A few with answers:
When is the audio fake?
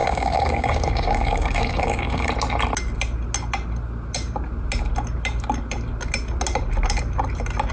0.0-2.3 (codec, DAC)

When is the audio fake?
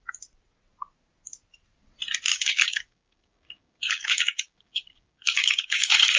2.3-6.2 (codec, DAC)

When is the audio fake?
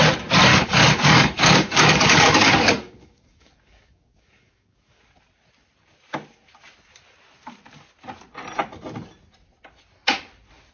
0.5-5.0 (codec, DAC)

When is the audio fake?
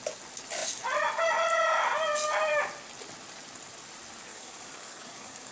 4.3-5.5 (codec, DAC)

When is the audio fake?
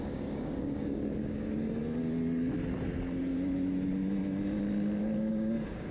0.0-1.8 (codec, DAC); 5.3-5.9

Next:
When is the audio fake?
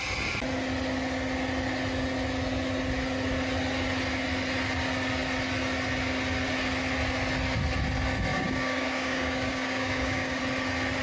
8.3-10.4 (codec, DAC)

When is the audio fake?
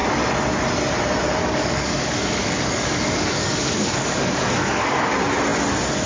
1.4-5.1 (codec, DAC)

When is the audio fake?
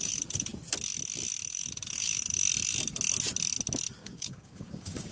4.0-5.1 (codec, DAC)